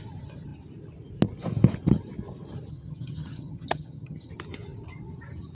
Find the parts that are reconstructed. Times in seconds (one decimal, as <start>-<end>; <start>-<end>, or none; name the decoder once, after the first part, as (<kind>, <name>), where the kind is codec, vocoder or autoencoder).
2.7-4.3 (vocoder, HiFi-GAN)